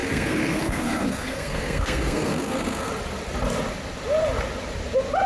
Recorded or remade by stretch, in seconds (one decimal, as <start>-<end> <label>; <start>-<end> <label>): 0.0-2.9 remade; 2.9-5.3 recorded